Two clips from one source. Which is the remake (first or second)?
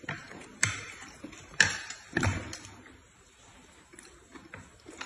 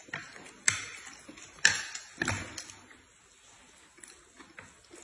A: first